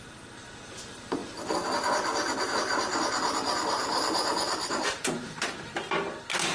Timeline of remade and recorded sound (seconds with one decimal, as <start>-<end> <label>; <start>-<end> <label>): 0.0-6.5 recorded